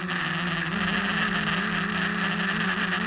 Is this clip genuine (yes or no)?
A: yes